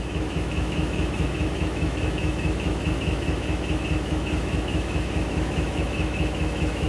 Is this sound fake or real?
fake